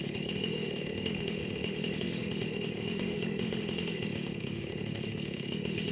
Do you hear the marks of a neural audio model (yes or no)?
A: yes